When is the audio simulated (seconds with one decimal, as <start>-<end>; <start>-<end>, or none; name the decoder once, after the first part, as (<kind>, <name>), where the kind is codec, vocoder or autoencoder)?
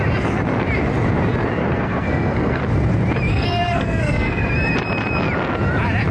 1.6-2.6 (codec, SNAC); 3.3-4.5